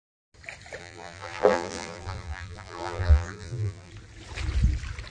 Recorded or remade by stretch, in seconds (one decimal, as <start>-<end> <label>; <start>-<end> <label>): 0.0-0.8 recorded; 0.8-3.9 remade; 3.9-5.1 recorded